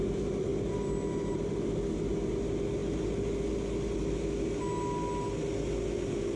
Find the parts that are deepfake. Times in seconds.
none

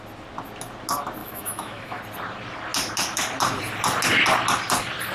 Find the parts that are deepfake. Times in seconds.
1.2-2.0 (autoencoder, DAC-VAE)

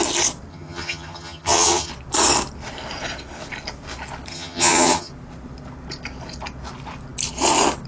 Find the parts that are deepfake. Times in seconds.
0.5-1.9 (vocoder, HiFi-GAN); 4.3-5.1

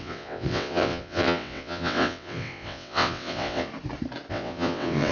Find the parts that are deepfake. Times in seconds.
0.0-3.7 (vocoder, WaveNeXt); 4.3-5.1

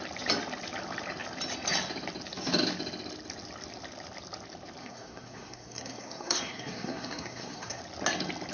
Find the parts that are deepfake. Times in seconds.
4.8-7.8 (codec, SNAC)

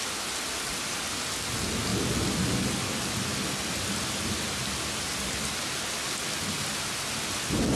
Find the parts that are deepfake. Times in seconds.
none